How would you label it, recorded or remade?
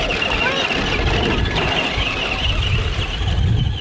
recorded